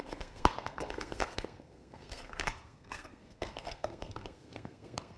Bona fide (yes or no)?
no